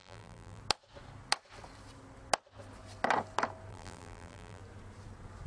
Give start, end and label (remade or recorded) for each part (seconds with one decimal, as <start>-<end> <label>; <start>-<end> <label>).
0.0-0.6 remade; 0.6-3.7 recorded; 3.7-4.6 remade; 4.6-5.5 recorded